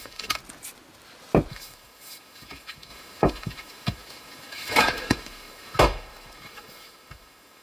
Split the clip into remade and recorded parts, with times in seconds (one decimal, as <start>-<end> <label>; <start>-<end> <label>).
0.0-0.4 remade; 0.4-1.5 recorded; 1.5-7.6 remade